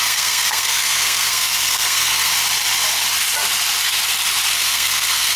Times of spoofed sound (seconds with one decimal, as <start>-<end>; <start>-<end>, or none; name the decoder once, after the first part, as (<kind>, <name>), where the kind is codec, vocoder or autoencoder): 0.0-2.3 (codec, SNAC); 4.5-5.4